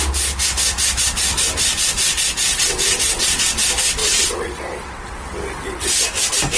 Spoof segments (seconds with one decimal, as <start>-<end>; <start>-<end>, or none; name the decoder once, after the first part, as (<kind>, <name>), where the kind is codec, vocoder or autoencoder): 2.5-3.5 (vocoder, WaveNeXt); 4.0-5.9